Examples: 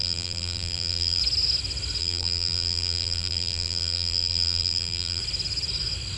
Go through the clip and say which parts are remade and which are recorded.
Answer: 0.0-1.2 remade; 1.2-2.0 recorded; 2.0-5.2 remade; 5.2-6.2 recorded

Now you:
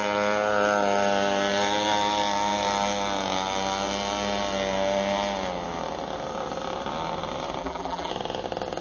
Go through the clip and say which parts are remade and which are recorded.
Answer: 0.0-7.6 recorded; 7.6-8.1 remade; 8.1-8.8 recorded

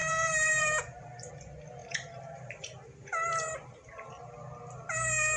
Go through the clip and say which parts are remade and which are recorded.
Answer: 0.0-1.3 remade; 1.3-1.8 recorded; 1.8-4.2 remade; 4.2-5.4 recorded